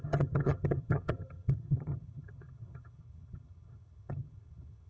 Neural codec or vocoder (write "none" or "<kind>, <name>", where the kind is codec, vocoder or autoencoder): vocoder, HiFi-GAN